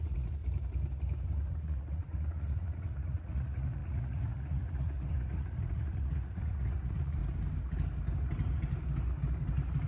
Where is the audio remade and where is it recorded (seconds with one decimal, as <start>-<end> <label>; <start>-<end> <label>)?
0.0-0.4 remade; 0.4-1.6 recorded; 1.6-7.2 remade; 7.2-9.9 recorded